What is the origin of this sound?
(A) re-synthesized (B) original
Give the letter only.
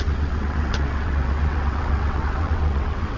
A